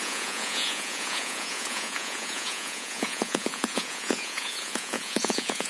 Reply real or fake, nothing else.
fake